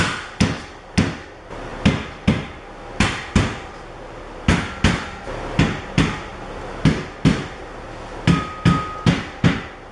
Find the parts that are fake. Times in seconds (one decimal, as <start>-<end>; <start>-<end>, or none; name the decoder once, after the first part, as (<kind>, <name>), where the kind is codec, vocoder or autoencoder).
none